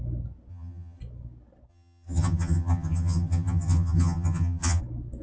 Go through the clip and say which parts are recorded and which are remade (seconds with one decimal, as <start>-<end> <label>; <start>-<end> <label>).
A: 0.0-0.5 recorded; 0.5-1.0 remade; 1.0-1.7 recorded; 1.7-4.8 remade; 4.8-5.2 recorded